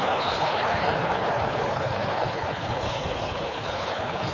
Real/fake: fake